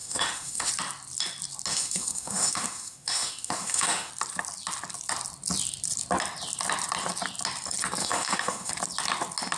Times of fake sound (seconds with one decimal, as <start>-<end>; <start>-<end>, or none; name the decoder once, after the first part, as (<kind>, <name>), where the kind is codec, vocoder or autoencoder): 0.0-0.7 (autoencoder, DAC-VAE); 1.7-4.1; 8.0-8.7